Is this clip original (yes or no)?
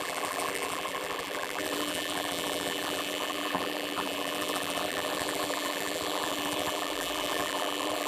no